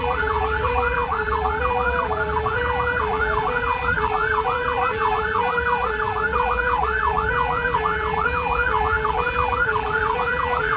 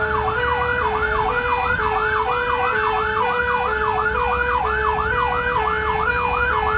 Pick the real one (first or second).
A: second